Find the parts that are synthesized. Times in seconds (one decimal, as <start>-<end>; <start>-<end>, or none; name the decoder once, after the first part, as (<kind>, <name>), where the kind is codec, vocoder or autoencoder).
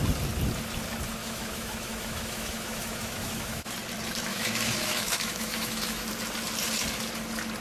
1.2-3.7 (autoencoder, DAC-VAE); 4.3-6.1